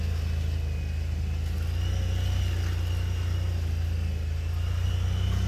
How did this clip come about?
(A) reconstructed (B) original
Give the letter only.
B